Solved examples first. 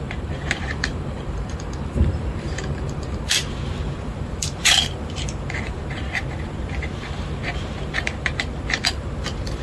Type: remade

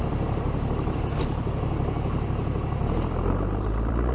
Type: remade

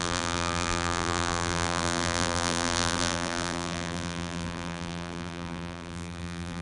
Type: remade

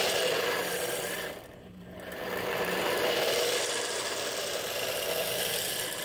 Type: remade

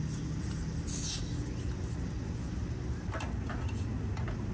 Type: recorded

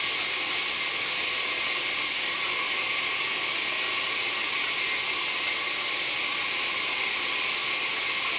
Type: recorded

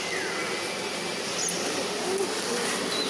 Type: recorded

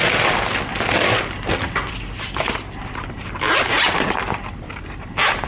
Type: recorded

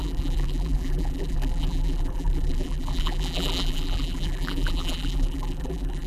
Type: remade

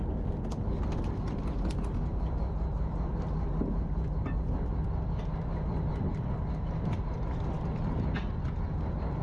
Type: recorded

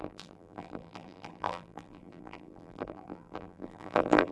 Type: remade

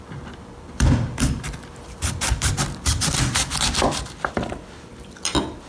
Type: remade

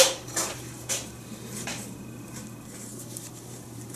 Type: remade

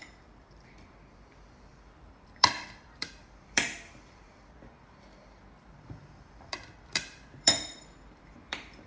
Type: remade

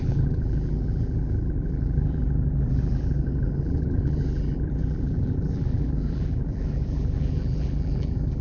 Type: remade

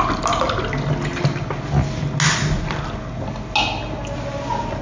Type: recorded